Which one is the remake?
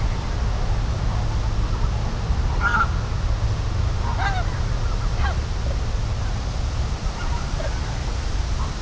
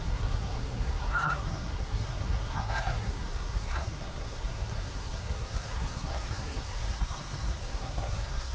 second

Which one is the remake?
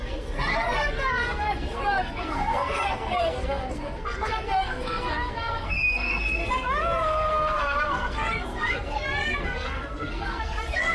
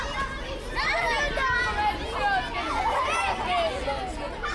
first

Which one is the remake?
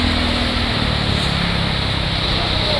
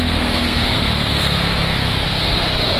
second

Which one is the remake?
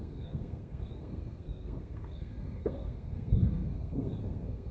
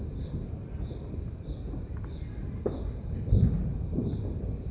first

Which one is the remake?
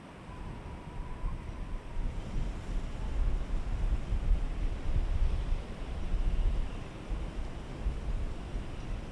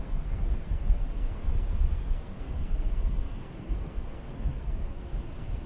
second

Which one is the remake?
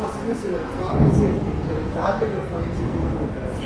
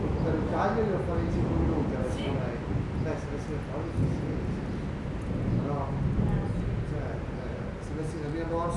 first